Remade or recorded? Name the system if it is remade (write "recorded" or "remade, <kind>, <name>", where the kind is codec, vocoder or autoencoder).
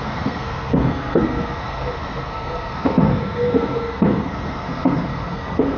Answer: remade, codec, SNAC